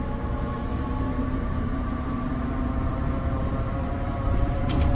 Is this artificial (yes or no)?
yes